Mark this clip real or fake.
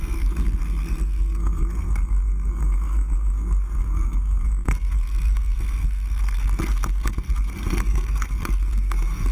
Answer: fake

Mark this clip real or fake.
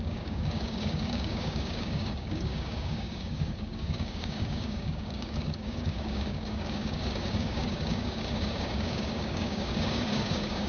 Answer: fake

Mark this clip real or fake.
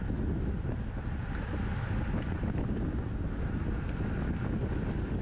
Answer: real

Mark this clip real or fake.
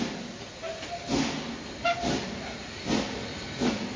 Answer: real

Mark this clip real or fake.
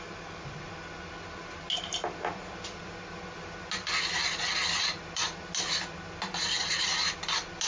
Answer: real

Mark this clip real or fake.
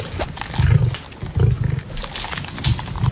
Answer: real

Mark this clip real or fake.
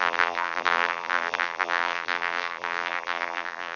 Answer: fake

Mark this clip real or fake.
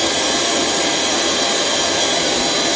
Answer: real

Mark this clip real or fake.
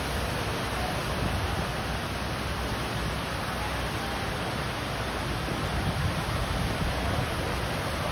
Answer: real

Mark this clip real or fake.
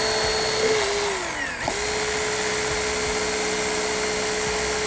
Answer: real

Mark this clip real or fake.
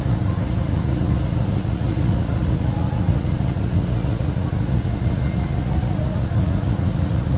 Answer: fake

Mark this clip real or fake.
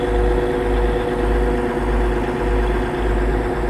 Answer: real